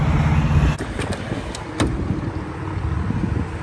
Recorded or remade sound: recorded